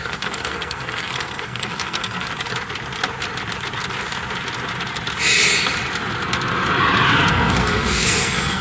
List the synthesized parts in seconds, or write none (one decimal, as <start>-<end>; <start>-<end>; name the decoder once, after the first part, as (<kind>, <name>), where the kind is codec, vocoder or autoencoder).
0.0-2.3 (codec, SNAC); 7.3-8.6